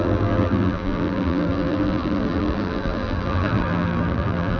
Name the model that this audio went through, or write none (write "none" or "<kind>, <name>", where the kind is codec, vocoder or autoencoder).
vocoder, BigVGAN v2